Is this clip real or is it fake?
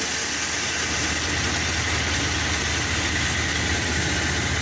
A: real